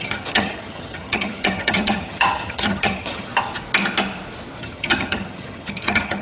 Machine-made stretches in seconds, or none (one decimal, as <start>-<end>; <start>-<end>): 0.0-3.3; 4.6-6.2